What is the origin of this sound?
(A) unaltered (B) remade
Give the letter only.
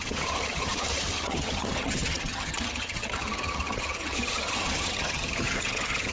B